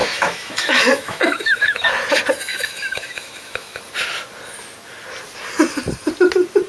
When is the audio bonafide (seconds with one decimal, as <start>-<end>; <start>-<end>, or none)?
1.9-2.5; 3.8-6.7